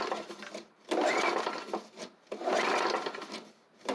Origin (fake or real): real